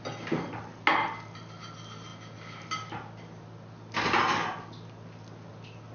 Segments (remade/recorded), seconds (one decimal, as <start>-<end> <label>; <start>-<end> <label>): 0.0-5.9 recorded